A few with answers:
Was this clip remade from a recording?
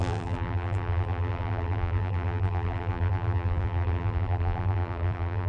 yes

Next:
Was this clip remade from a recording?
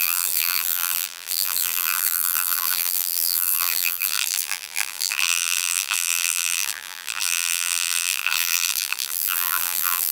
yes